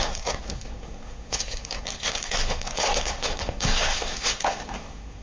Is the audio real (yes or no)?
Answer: no